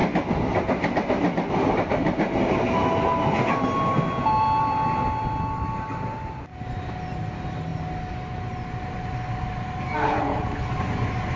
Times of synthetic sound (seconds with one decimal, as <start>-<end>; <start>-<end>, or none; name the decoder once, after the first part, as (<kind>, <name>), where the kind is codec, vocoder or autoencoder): 10.0-10.7 (codec, HILCodec)